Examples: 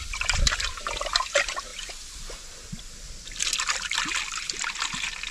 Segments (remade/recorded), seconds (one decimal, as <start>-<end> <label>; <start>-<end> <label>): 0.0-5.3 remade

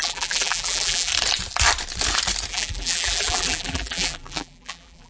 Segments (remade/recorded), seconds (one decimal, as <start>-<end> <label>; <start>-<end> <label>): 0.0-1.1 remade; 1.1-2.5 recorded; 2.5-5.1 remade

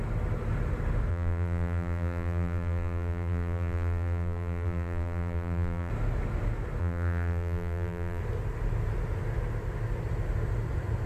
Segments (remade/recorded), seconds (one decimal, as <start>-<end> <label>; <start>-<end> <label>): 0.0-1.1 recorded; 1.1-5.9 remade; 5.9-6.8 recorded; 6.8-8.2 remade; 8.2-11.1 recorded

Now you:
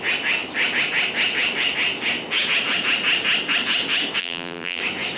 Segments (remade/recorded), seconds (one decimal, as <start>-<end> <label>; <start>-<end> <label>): 0.0-4.2 recorded; 4.2-4.8 remade; 4.8-5.2 recorded

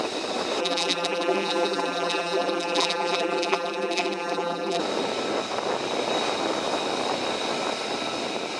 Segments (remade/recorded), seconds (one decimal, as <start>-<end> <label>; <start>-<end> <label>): 0.0-0.6 recorded; 0.6-4.8 remade; 4.8-8.6 recorded

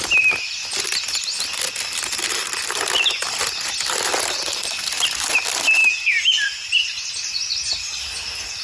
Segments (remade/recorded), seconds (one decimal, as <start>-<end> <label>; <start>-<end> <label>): 0.0-5.8 recorded; 5.8-8.0 remade; 8.0-8.6 recorded

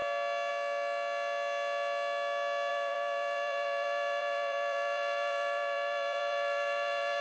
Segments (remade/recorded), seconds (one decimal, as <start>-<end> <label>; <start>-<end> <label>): 0.0-2.7 recorded; 2.7-7.2 remade